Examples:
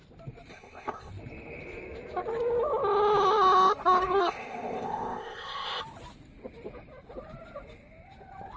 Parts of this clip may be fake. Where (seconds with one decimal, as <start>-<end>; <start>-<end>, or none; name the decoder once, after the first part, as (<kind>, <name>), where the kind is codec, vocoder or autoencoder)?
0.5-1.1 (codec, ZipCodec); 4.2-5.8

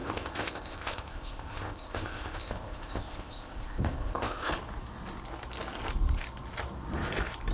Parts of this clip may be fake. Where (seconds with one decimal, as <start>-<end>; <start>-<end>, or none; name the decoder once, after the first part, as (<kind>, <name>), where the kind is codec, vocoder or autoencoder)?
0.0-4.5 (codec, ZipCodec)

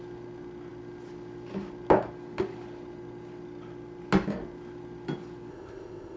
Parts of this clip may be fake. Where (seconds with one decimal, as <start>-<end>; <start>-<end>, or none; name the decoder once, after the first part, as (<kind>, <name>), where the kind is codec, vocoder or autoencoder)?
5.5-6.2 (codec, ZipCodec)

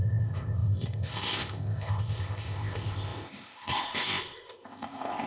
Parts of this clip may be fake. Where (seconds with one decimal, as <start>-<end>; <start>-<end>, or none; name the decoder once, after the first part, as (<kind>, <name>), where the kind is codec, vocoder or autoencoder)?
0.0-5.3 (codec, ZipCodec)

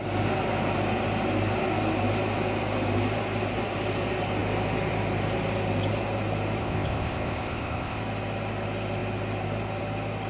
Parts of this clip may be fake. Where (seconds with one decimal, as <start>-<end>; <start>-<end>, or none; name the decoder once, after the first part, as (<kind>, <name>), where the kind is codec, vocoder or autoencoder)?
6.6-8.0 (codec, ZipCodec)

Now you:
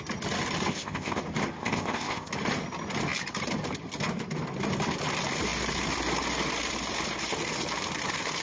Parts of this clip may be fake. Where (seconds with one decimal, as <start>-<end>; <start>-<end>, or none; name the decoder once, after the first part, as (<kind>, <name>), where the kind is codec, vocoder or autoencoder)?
0.7-1.2 (codec, ZipCodec); 1.6-2.3